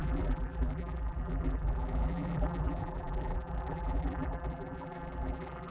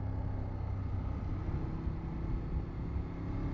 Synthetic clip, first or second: first